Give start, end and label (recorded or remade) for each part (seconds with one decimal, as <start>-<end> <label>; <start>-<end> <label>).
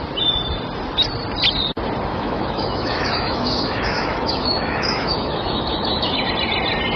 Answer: 0.0-2.1 recorded; 2.1-6.3 remade; 6.3-7.0 recorded